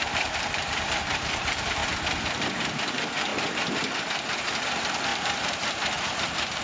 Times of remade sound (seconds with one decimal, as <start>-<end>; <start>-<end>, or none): 0.0-1.8; 2.4-3.3; 4.0-6.6